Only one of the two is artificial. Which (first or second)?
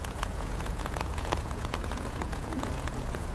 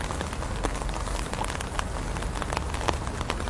first